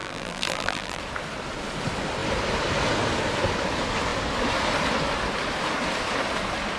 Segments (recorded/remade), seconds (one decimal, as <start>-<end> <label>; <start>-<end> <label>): 0.0-1.0 remade; 1.0-6.8 recorded